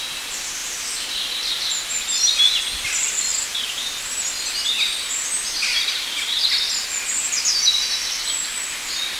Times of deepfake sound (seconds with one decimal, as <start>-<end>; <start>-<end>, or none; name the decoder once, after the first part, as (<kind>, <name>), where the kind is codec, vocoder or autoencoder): none